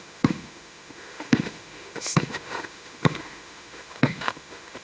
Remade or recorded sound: remade